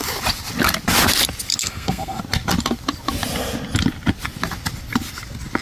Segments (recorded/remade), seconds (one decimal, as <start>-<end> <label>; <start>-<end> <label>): 0.0-1.6 recorded; 1.6-2.2 remade; 2.2-5.6 recorded